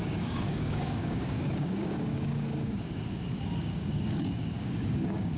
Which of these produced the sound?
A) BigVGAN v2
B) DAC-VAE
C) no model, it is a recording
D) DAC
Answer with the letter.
D